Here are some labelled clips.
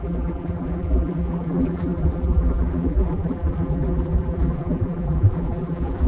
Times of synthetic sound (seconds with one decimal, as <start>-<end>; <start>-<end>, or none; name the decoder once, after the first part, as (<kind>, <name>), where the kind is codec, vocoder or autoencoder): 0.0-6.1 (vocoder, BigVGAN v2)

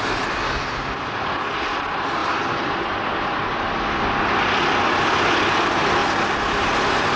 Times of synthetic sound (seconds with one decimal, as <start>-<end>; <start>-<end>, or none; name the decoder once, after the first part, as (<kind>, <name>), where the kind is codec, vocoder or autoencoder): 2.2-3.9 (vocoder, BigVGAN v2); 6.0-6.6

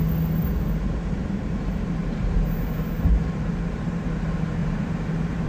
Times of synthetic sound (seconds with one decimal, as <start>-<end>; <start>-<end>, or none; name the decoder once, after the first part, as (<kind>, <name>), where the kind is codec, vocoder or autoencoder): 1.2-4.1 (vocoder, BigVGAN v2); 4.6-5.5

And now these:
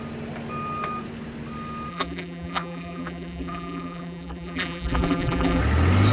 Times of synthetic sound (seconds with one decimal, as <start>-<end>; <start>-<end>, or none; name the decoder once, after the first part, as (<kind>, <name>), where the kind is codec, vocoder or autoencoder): 1.9-5.6 (vocoder, BigVGAN v2)

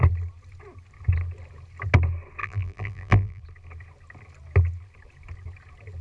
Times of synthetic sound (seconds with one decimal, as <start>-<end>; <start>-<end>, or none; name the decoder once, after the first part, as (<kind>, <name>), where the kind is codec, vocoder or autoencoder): 2.4-3.4 (vocoder, BigVGAN v2)

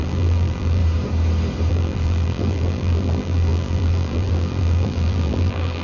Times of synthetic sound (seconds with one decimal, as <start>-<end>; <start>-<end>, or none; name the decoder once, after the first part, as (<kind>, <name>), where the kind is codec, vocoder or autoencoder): 0.0-0.8 (vocoder, BigVGAN v2); 1.7-5.8

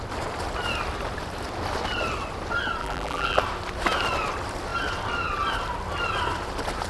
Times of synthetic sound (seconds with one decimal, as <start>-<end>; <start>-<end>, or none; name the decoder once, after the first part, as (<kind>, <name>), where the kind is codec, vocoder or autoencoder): 2.8-3.4 (vocoder, BigVGAN v2)